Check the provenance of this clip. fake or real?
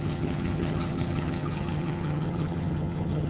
fake